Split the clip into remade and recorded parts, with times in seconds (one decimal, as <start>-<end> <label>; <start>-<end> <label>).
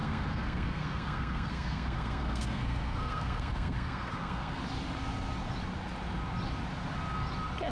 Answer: 0.0-4.6 remade; 4.6-7.7 recorded